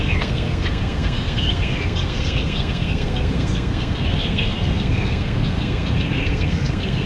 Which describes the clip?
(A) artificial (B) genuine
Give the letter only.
A